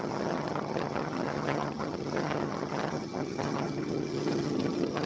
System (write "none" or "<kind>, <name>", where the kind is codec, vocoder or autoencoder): vocoder, HiFi-GAN